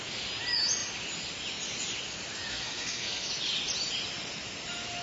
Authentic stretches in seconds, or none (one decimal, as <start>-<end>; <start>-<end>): 0.0-2.5; 3.3-5.0